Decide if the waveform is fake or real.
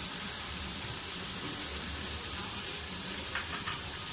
fake